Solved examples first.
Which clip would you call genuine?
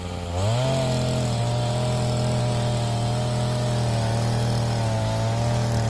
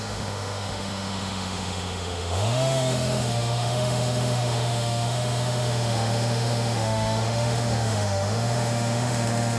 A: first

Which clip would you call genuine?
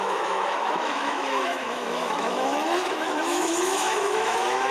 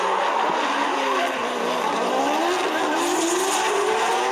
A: second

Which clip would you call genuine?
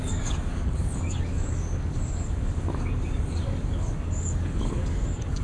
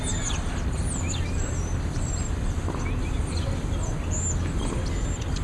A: second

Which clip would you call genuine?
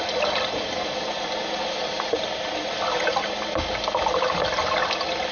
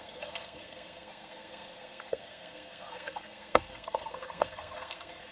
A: first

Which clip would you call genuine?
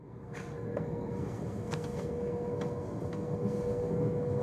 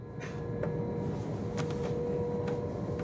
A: second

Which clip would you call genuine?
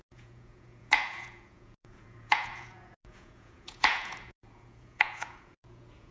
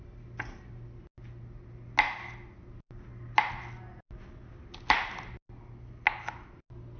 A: second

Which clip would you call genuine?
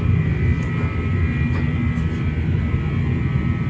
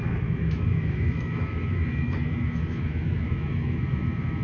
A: first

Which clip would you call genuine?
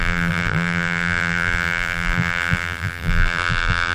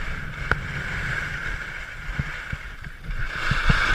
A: second